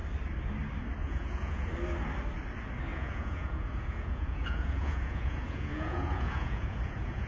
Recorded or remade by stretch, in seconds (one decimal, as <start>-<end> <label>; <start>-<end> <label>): 0.0-1.0 recorded; 1.0-1.7 remade; 1.7-2.9 recorded; 2.9-7.3 remade